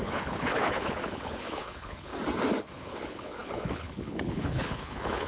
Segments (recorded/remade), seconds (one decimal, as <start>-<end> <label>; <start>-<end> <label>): 0.0-2.1 remade; 2.1-2.6 recorded; 2.6-5.3 remade